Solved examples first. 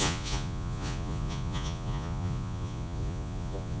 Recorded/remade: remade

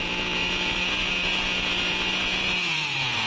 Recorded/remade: remade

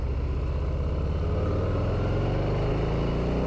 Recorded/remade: recorded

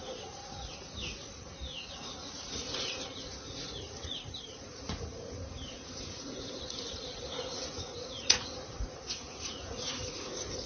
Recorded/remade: remade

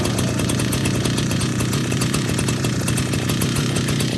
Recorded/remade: remade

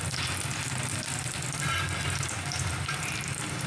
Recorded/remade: recorded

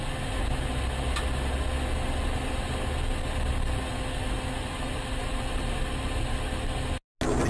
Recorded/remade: recorded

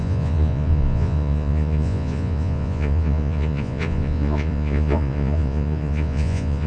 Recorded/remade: remade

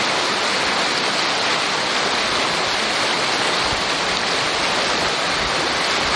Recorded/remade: recorded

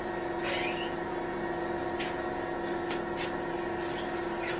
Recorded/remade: recorded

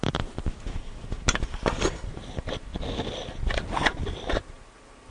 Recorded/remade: recorded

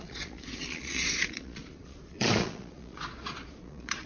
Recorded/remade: remade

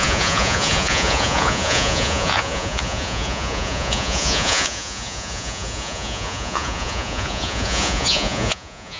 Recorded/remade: remade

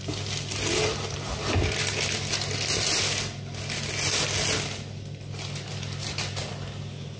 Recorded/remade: recorded